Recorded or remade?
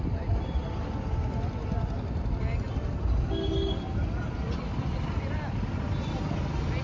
recorded